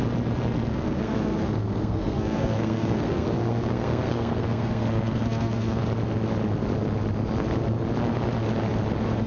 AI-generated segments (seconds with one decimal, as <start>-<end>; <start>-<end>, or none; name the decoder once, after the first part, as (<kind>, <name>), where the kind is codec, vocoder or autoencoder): 0.7-5.8 (codec, SNAC)